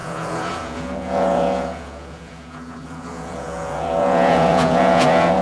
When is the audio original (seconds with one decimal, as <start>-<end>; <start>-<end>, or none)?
none